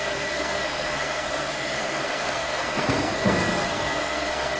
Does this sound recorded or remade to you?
remade